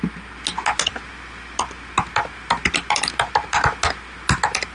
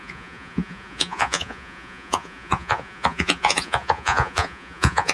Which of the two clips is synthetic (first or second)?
second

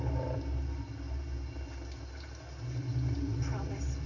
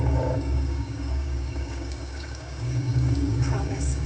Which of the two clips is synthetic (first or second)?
second